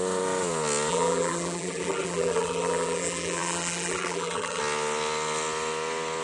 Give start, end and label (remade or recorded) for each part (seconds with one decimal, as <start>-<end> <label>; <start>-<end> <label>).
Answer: 0.0-0.9 recorded; 0.9-4.6 remade; 4.6-6.2 recorded